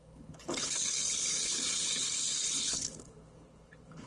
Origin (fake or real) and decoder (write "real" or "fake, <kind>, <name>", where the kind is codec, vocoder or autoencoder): fake, codec, HILCodec